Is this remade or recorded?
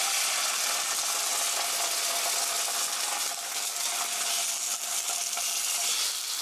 recorded